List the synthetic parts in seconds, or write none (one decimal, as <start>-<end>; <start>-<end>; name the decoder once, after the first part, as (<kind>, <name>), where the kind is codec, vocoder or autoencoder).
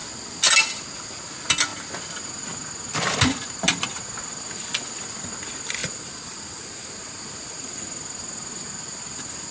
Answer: 5.8-6.9 (vocoder, BigVGAN v2)